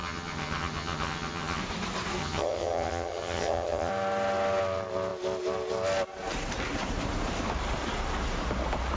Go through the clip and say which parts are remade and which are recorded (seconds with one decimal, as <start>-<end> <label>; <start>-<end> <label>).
0.0-1.6 remade; 1.6-2.2 recorded; 2.2-3.9 remade; 3.9-9.0 recorded

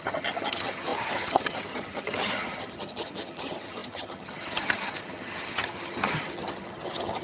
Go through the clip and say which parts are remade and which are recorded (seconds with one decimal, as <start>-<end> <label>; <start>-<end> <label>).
0.0-7.2 remade

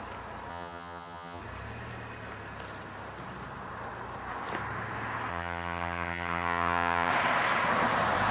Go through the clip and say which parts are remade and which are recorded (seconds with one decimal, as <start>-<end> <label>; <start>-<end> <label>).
0.0-0.5 recorded; 0.5-1.4 remade; 1.4-5.3 recorded; 5.3-7.1 remade; 7.1-8.3 recorded

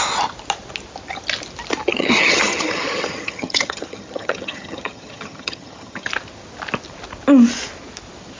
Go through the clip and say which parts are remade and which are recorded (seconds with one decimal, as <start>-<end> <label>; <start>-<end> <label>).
0.0-1.9 recorded; 1.9-6.1 remade; 6.1-8.4 recorded

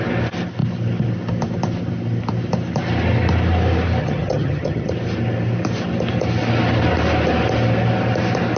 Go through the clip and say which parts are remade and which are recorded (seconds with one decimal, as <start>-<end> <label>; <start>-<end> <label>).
0.0-4.0 recorded; 4.0-4.9 remade; 4.9-8.6 recorded